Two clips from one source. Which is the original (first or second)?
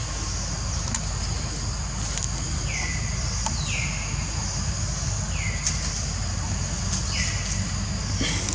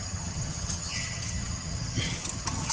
first